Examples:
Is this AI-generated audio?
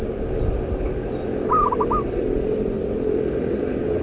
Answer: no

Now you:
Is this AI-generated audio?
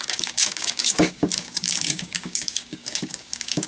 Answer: yes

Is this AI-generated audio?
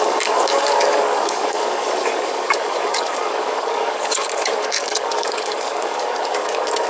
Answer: yes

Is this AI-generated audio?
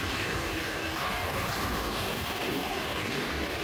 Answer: yes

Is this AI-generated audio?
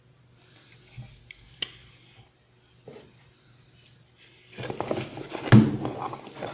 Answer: no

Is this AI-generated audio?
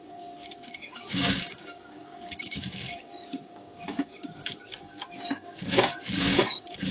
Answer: yes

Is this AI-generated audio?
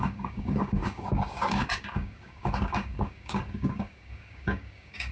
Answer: yes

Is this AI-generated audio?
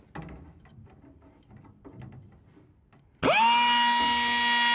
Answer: no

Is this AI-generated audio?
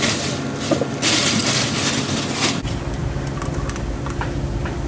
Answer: no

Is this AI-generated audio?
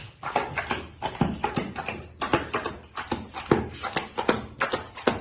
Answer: no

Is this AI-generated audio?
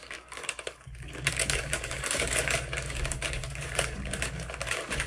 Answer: yes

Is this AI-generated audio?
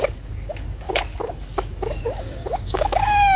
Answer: yes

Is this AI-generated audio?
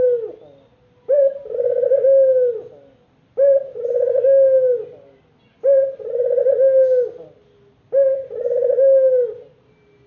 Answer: no